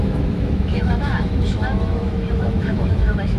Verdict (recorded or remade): remade